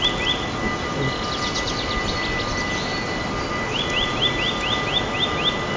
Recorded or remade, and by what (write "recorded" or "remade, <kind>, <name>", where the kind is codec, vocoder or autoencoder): recorded